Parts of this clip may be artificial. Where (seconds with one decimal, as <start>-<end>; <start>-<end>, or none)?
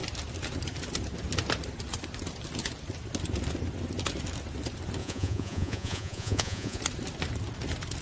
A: 5.0-6.8